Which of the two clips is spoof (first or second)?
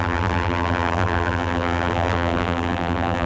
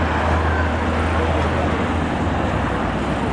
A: first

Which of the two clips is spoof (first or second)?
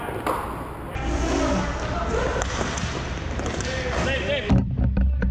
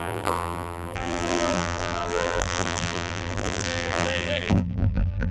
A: second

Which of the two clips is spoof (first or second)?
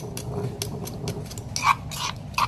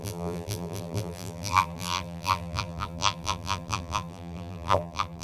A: second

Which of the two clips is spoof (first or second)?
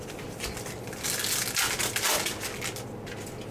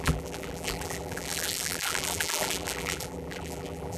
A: second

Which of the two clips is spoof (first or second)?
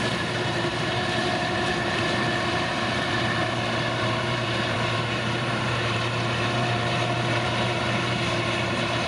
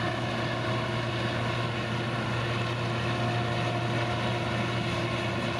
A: first